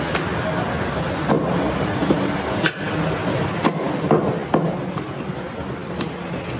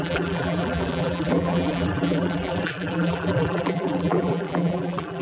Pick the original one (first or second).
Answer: first